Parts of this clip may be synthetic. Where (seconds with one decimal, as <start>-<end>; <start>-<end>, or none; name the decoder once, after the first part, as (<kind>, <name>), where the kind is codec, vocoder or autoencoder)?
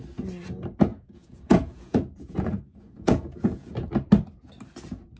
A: 0.9-3.7 (vocoder, Vocos)